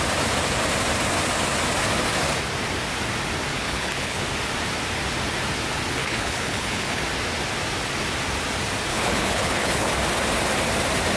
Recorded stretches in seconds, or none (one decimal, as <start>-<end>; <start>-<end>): 0.0-3.5; 4.2-6.0; 7.0-8.9; 9.9-11.2